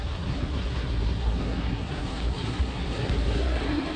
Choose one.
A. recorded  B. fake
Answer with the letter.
B